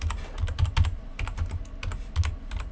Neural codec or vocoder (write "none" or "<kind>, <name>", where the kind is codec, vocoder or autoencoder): none